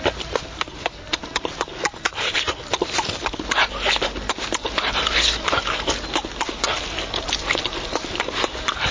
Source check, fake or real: real